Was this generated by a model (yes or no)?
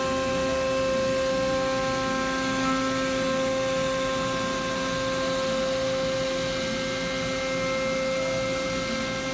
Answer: no